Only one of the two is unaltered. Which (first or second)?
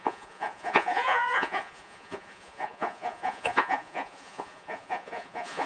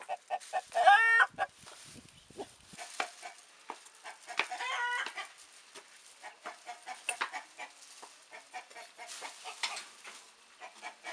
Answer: second